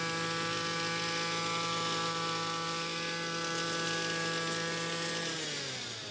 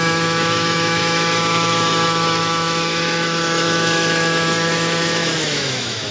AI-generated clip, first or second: second